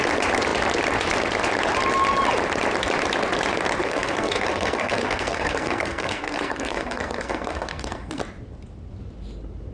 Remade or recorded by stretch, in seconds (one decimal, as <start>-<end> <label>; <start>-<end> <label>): 0.0-3.8 recorded; 3.8-8.2 remade; 8.2-9.7 recorded